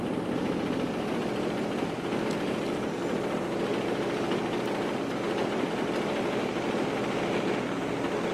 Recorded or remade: recorded